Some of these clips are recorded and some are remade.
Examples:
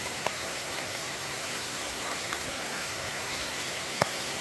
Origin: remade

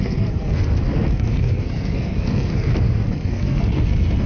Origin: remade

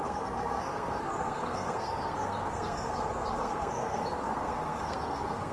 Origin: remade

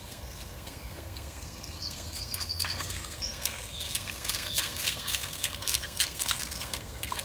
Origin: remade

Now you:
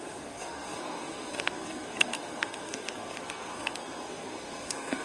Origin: remade